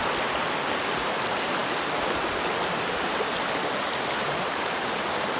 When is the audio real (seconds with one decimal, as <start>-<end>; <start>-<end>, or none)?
0.0-5.4